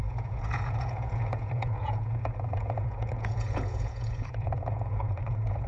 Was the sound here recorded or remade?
remade